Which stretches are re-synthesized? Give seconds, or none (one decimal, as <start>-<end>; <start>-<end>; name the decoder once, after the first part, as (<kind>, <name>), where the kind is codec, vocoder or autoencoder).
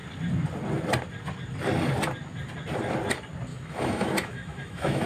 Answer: 3.5-5.1 (autoencoder, DAC-VAE)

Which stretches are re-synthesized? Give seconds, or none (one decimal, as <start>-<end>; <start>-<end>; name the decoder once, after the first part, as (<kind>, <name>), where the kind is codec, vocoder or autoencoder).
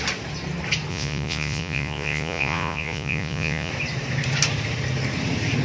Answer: 0.9-3.7 (vocoder, Vocos)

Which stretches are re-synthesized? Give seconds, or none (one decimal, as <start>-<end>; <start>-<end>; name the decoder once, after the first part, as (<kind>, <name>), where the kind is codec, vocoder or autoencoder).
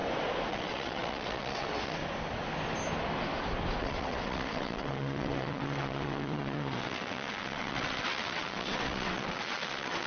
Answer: 0.5-2.0 (vocoder, WaveNeXt); 3.8-10.1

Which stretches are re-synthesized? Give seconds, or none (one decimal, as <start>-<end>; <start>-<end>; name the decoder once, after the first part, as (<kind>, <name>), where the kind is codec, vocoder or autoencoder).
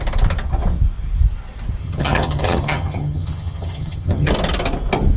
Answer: 1.8-4.3 (vocoder, HiFi-GAN)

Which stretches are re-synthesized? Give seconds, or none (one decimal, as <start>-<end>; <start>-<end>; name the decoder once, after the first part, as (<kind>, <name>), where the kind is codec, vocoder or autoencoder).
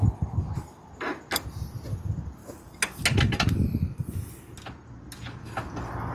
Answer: none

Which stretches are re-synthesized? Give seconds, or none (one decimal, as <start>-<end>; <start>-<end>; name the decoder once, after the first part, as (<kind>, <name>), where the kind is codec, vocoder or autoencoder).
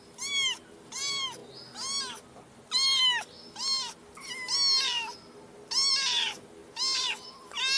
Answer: none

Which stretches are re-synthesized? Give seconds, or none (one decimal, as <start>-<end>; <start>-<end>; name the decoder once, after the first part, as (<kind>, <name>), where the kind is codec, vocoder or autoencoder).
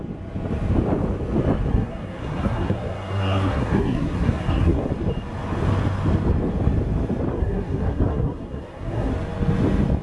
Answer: 1.7-4.9 (codec, SNAC); 7.3-9.1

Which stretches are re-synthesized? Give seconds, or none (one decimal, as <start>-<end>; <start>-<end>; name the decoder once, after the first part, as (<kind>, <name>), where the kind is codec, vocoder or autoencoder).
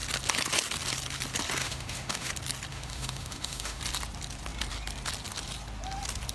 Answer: 1.6-2.3 (autoencoder, DAC-VAE); 2.7-3.8